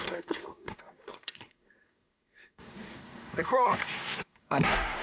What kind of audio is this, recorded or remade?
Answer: remade